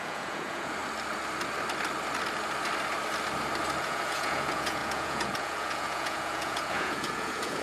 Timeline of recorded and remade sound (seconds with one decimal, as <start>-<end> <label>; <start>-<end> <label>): 0.0-0.8 remade; 0.8-3.8 recorded; 3.8-7.6 remade